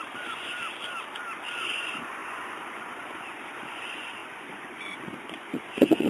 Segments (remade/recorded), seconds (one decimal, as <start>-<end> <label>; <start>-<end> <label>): 0.0-0.6 remade; 0.6-1.6 recorded; 1.6-6.1 remade